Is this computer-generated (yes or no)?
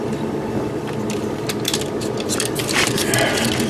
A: no